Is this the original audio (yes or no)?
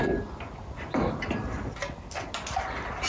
yes